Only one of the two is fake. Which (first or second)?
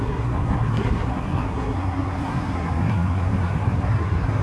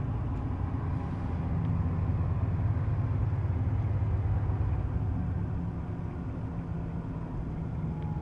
first